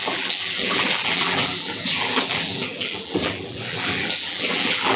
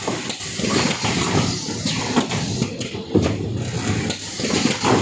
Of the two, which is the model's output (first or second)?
first